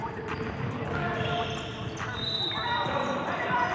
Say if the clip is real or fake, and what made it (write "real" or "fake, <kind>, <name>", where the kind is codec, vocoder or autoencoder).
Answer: real